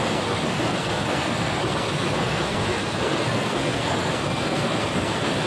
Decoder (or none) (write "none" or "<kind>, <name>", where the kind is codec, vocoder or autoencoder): codec, SNAC